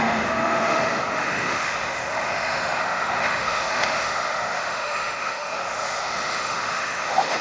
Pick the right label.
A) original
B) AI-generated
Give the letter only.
B